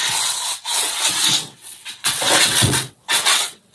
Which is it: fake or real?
fake